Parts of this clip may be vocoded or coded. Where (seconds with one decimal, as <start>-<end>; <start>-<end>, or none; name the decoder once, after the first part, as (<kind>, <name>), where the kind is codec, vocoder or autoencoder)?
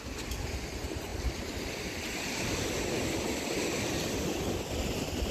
none